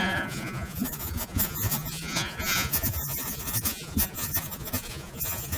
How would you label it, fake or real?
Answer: fake